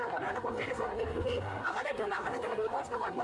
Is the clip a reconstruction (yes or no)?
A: yes